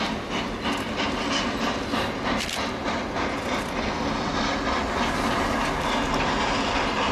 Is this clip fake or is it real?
real